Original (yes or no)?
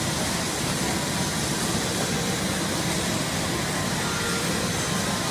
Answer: yes